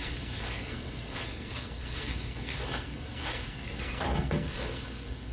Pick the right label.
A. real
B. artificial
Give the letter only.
B